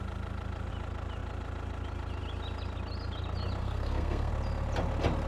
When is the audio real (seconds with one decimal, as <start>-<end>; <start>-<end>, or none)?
0.0-3.6; 4.3-5.3